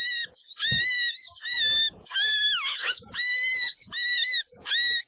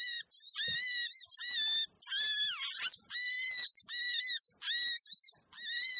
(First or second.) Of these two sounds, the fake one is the first